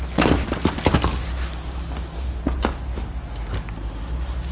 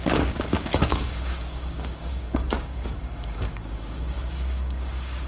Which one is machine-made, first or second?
second